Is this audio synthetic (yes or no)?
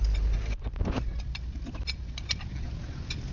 no